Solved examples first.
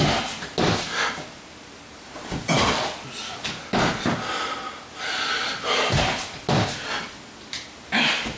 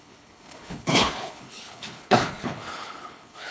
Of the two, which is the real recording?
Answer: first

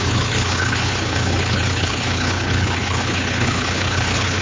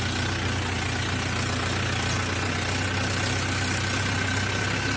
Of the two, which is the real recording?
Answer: second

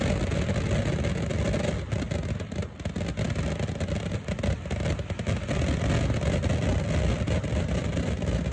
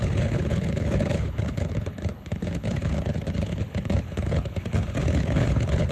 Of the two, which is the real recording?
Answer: first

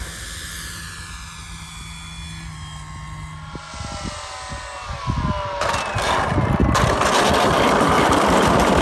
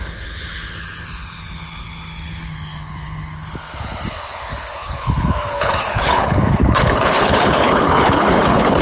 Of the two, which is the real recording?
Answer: first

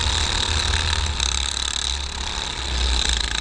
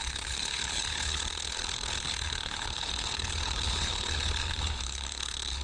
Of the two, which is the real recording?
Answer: first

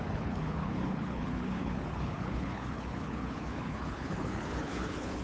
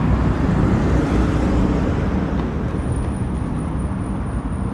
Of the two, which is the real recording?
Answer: second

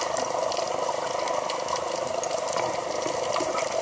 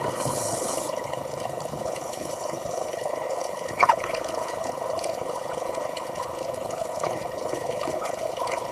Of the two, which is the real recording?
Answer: first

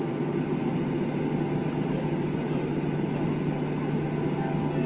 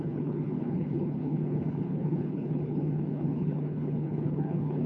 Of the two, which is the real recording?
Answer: first